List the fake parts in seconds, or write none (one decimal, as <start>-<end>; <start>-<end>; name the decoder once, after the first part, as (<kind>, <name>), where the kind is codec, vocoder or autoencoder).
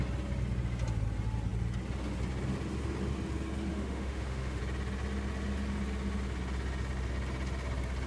3.7-4.6 (autoencoder, DAC-VAE)